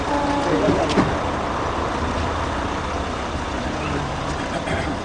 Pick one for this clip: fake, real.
real